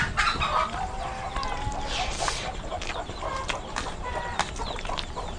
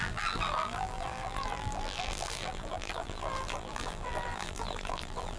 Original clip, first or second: first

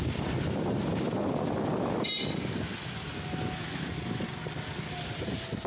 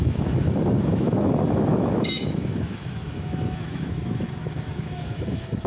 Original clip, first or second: first